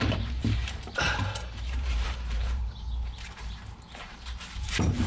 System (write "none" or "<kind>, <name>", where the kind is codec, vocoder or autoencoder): vocoder, BigVGAN v2